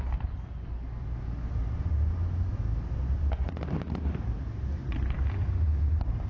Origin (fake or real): real